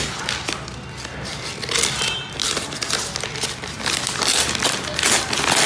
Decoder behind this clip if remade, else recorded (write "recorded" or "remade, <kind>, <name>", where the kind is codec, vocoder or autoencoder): recorded